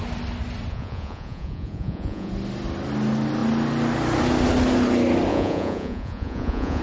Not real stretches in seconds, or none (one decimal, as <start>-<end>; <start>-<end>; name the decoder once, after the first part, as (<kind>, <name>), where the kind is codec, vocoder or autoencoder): 0.7-2.3 (vocoder, Vocos); 5.3-6.8

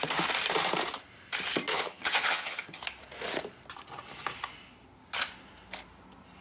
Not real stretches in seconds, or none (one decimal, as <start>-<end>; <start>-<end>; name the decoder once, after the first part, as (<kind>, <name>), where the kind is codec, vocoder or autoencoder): 1.7-2.8 (vocoder, HiFi-GAN)